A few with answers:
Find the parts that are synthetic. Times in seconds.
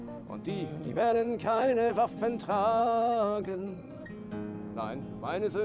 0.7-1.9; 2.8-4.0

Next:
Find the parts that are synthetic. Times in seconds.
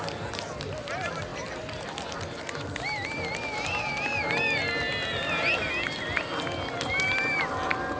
none